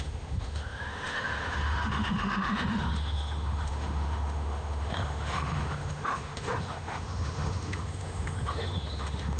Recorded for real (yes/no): no